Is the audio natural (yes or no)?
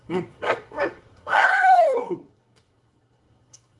no